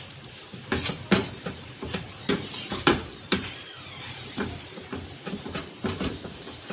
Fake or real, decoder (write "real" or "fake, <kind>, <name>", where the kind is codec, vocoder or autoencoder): fake, vocoder, BigVGAN v2